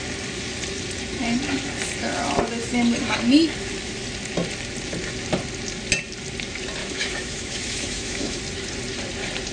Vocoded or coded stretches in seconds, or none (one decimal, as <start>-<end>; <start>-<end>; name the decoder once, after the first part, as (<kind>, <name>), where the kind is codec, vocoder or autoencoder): 6.8-8.4 (autoencoder, DAC-VAE)